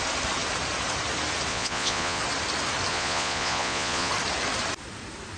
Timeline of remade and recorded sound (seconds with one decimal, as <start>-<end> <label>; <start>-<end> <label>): 0.0-1.5 recorded; 1.5-2.2 remade; 2.2-2.9 recorded; 2.9-4.1 remade; 4.1-5.4 recorded